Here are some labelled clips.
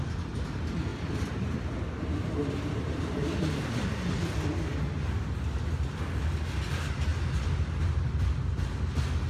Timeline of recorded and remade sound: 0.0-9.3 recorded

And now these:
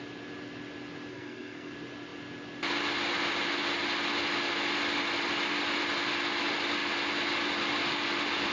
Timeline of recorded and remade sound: 0.0-1.1 recorded; 1.1-1.7 remade; 1.7-8.5 recorded